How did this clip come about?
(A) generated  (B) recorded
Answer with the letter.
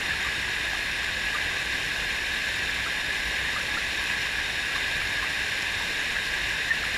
B